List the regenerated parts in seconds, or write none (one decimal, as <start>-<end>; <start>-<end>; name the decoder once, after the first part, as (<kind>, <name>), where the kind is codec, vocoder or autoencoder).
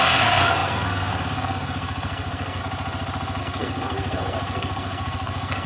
0.0-2.6 (codec, SNAC); 3.4-5.7